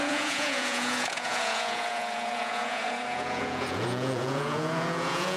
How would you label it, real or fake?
fake